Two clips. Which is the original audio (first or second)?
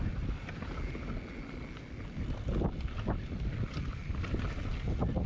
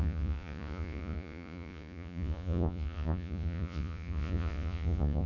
first